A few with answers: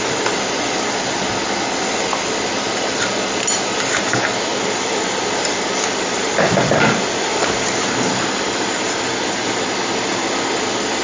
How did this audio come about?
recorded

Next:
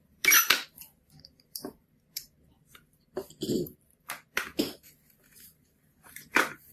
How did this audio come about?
remade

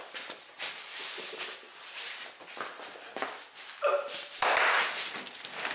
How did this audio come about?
recorded